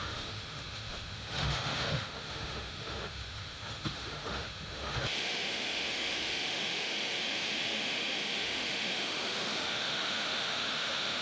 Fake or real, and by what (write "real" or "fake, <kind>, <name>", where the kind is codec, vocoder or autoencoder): fake, autoencoder, DAC-VAE